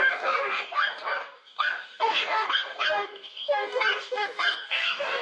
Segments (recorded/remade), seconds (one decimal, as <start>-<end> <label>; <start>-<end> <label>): 0.0-5.2 remade